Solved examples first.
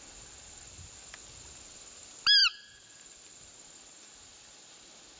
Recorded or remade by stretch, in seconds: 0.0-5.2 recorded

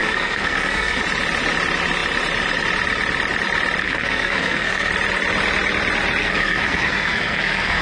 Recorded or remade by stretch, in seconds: 0.0-1.0 remade; 1.0-3.8 recorded; 3.8-4.9 remade; 4.9-6.2 recorded; 6.2-7.8 remade

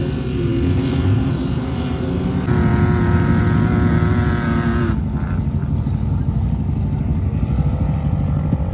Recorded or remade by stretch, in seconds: 0.0-8.7 recorded

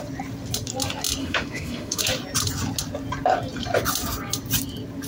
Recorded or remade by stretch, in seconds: 0.0-1.2 recorded; 1.2-2.0 remade; 2.0-5.1 recorded

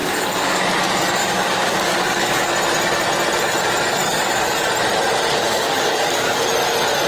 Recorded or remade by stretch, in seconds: 0.0-0.6 remade; 0.6-1.2 recorded; 1.2-2.5 remade; 2.5-4.0 recorded; 4.0-4.7 remade; 4.7-5.4 recorded; 5.4-6.4 remade; 6.4-7.1 recorded

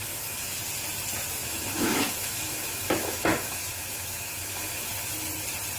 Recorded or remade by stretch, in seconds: 0.0-0.5 remade; 0.5-1.4 recorded; 1.4-4.9 remade; 4.9-5.8 recorded